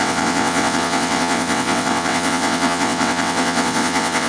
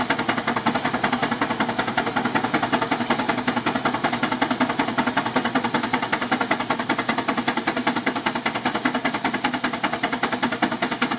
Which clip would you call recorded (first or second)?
second